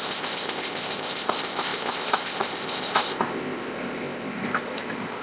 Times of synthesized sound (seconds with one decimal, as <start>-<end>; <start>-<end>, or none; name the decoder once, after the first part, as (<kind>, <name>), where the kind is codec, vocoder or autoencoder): 0.0-5.2 (codec, ZipCodec)

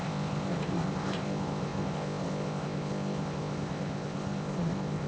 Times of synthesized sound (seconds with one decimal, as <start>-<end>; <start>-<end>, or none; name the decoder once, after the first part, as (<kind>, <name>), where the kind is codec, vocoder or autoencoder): 0.0-5.1 (codec, ZipCodec)

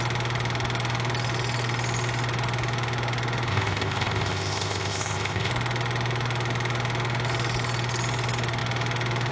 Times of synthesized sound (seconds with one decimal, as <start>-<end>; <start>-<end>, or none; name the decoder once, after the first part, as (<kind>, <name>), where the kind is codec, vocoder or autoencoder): 3.5-5.5 (codec, ZipCodec)

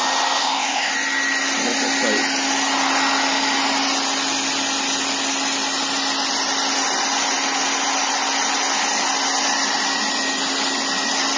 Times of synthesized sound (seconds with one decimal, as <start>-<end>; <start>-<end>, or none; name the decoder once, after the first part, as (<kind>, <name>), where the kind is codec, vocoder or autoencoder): 0.4-0.9 (codec, ZipCodec)

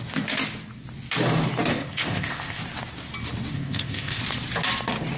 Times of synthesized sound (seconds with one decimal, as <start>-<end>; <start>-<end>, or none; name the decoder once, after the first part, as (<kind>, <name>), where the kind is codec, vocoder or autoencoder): 1.7-2.6 (codec, ZipCodec); 3.5-4.2

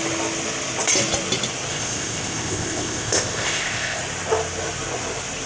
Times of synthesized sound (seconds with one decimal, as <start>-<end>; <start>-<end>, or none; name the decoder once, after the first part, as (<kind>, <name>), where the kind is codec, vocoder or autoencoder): 1.7-4.0 (codec, ZipCodec)

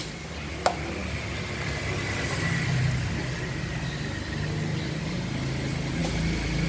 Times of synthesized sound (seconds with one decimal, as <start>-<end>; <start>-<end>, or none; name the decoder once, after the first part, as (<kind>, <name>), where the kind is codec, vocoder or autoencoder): none

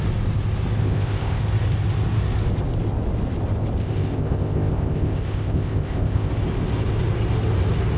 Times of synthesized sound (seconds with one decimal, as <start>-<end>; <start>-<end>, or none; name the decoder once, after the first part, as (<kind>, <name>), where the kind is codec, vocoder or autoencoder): 0.8-1.4 (codec, ZipCodec); 3.8-6.3